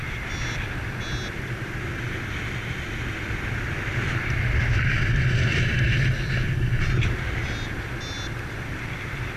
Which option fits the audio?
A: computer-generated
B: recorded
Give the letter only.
B